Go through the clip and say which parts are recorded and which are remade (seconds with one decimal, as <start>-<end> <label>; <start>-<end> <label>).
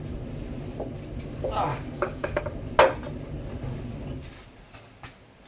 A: 0.0-1.7 recorded; 1.7-2.4 remade; 2.4-5.5 recorded